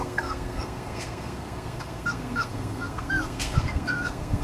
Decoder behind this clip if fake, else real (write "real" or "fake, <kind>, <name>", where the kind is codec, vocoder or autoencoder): fake, codec, SNAC